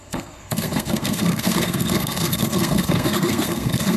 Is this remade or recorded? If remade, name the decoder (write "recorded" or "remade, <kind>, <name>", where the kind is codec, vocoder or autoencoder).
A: remade, codec, SNAC